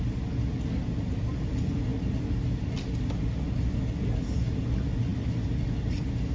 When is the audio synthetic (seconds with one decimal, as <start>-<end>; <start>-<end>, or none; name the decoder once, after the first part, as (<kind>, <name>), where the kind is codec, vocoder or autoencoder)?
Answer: none